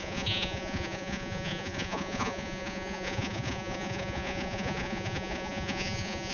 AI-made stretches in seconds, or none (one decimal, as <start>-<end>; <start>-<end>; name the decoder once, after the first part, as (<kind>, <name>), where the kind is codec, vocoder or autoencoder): 0.0-6.3 (vocoder, Vocos)